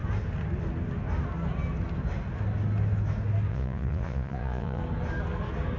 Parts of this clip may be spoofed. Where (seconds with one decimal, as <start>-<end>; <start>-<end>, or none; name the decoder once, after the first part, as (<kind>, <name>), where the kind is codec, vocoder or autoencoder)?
3.5-4.8 (vocoder, Vocos)